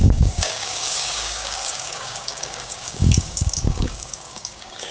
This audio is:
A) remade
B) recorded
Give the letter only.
A